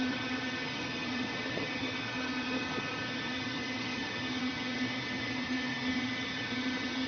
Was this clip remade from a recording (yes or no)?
yes